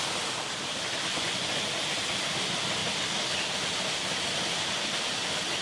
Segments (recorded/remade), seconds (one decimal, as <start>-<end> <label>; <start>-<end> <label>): 0.0-1.1 recorded; 1.1-1.7 remade; 1.7-5.6 recorded